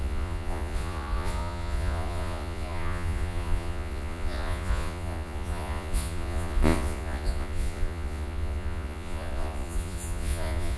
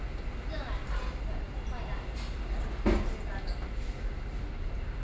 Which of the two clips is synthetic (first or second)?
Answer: first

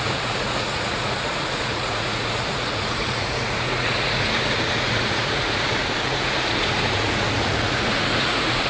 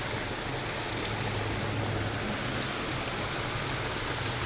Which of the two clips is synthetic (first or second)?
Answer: first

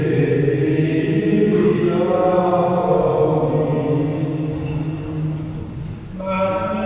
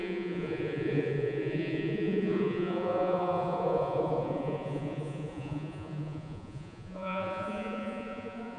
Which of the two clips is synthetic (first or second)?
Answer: second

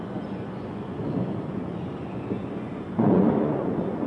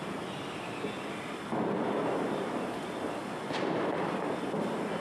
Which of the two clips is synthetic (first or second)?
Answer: first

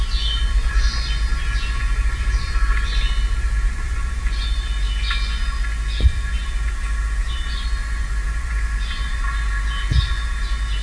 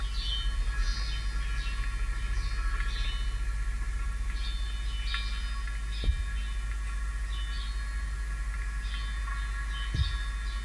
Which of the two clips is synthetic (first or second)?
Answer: first